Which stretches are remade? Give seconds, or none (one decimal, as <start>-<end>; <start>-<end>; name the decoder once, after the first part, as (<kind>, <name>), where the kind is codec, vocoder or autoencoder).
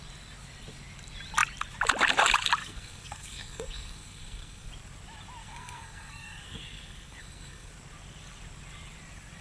2.6-4.7 (codec, SNAC); 5.4-7.7